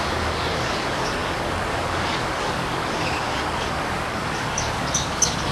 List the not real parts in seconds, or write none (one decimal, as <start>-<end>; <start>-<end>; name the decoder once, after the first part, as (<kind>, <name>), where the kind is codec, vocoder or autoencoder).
0.0-5.5 (codec, DAC)